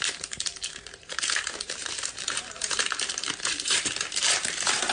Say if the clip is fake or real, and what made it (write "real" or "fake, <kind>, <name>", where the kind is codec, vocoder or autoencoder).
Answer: fake, vocoder, BigVGAN v2